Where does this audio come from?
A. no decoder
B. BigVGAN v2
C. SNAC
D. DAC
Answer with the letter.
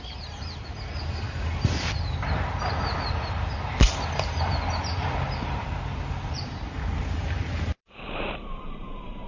B